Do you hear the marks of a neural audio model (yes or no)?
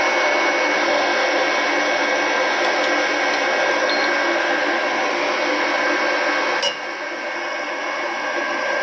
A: no